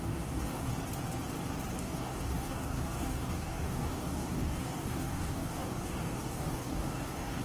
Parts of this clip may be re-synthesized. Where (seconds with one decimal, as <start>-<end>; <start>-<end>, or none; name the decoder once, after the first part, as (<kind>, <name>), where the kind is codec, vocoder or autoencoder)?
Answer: 0.0-0.7 (codec, DAC); 1.8-7.4